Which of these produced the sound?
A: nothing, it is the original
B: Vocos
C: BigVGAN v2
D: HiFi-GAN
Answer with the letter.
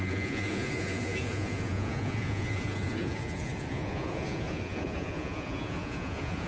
B